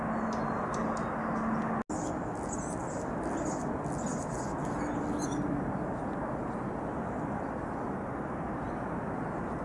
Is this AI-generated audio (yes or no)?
no